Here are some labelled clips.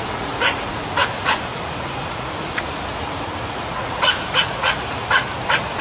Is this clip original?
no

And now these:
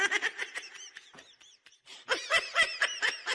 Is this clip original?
yes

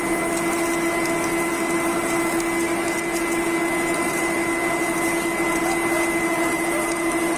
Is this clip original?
yes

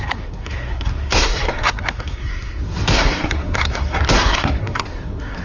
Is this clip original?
no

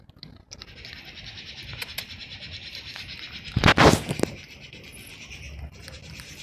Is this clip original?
yes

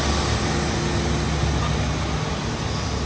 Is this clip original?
yes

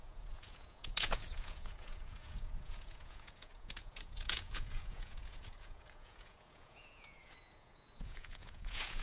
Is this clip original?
no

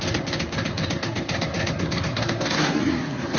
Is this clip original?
no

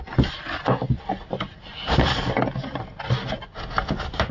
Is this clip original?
yes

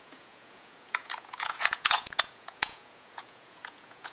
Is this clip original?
no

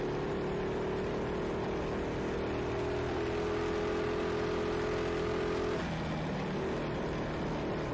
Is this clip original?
yes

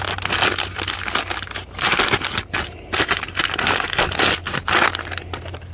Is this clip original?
yes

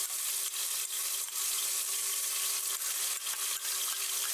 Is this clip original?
yes